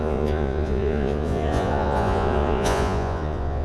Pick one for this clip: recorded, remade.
remade